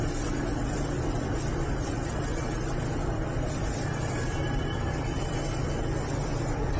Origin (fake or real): fake